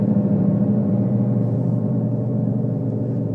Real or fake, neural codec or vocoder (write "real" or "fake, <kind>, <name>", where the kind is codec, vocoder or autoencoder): fake, vocoder, BigVGAN v2